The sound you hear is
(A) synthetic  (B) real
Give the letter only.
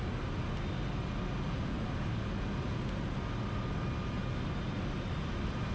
B